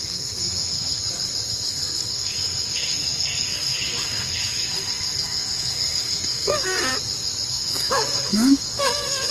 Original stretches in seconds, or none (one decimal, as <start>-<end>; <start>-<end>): 1.0-1.5; 6.9-7.5